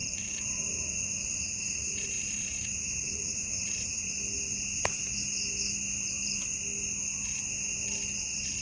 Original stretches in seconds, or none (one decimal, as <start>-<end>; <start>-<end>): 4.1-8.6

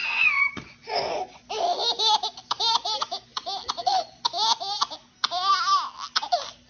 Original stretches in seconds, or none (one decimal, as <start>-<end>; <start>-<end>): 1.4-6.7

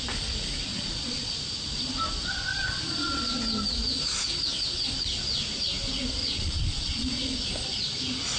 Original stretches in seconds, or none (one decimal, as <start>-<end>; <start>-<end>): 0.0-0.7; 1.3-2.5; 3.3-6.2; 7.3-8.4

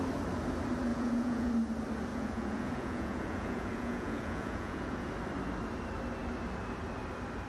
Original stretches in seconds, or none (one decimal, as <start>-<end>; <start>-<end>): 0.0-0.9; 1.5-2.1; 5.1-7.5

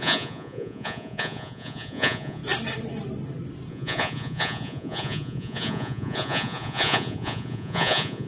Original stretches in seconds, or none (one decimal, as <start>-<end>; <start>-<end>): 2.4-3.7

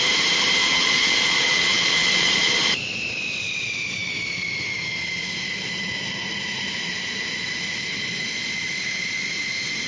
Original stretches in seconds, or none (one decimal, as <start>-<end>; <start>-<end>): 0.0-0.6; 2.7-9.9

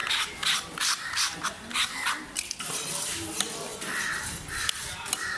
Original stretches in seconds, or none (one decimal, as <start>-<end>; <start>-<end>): 0.0-5.4

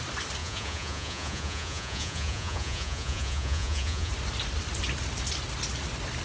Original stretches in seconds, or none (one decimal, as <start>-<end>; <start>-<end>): 0.0-0.4; 4.1-6.2